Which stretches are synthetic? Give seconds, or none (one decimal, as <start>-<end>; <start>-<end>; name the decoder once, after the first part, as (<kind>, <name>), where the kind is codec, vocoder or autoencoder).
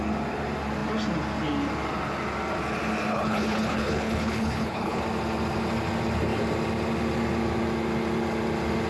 3.1-5.0 (codec, HILCodec)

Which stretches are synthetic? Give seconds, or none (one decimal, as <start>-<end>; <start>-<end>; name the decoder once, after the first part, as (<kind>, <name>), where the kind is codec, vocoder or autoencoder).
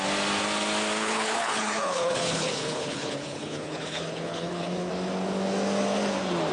1.0-4.9 (codec, HILCodec)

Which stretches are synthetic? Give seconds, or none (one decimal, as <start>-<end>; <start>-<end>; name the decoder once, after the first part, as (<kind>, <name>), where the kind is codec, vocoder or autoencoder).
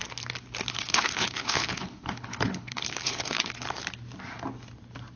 0.7-3.8 (codec, HILCodec)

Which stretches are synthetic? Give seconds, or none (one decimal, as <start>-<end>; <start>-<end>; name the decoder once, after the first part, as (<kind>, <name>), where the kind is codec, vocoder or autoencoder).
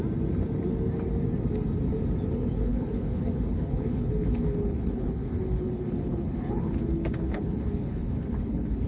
2.3-8.9 (codec, HILCodec)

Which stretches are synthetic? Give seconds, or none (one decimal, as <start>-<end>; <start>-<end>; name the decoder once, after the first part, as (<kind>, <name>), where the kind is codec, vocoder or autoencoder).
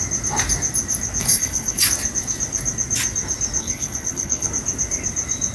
1.2-1.8 (codec, HILCodec); 3.6-4.5